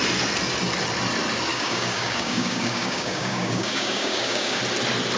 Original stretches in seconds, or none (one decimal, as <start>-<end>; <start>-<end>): 0.0-1.5; 4.6-5.2